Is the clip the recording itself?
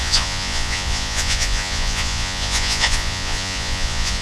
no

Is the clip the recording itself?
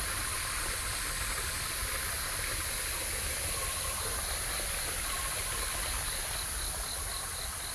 yes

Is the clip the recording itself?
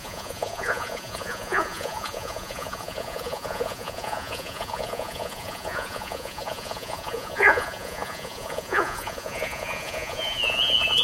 no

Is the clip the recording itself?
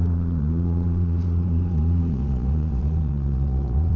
no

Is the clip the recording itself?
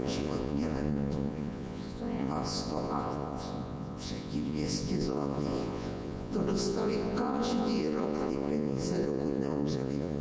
no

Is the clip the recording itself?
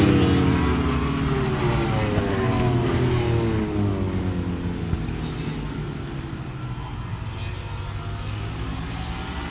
yes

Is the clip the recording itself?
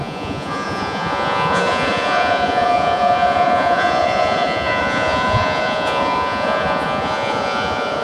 no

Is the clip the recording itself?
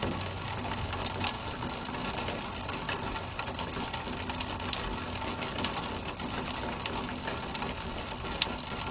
yes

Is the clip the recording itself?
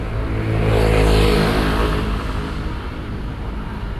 yes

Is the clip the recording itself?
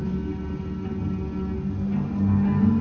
yes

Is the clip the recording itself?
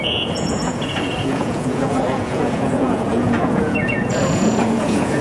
no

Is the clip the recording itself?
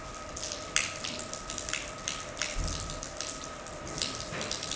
no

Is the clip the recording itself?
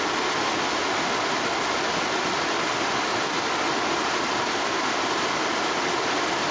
yes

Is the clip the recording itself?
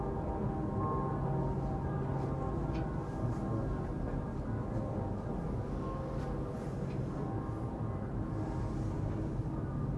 yes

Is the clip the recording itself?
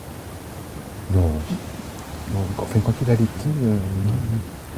no